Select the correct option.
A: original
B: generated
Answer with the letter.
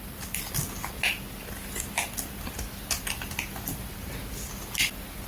A